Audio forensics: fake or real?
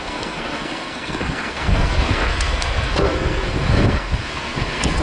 fake